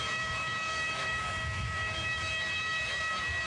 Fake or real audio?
fake